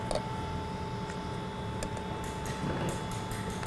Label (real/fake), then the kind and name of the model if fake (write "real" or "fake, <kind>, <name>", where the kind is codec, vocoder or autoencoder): real